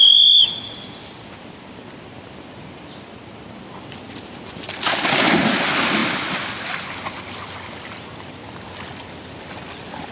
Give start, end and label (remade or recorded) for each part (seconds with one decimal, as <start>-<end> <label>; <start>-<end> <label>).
0.0-10.1 recorded